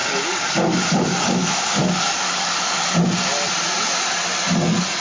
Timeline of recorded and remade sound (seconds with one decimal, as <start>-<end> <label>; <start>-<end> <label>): 0.0-3.0 remade; 3.0-5.0 recorded